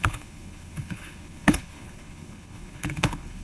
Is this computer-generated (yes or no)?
yes